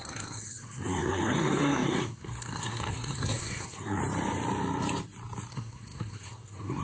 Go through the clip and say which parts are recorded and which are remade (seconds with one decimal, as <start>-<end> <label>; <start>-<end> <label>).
0.0-4.0 remade; 4.0-5.5 recorded; 5.5-6.8 remade